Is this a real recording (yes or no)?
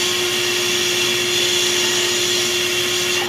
yes